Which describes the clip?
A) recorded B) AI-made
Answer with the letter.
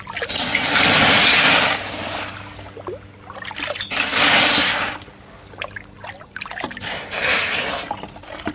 A